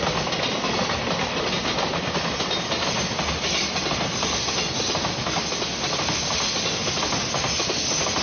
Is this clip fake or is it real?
real